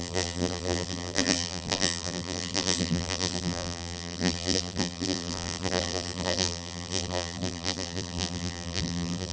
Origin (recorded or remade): remade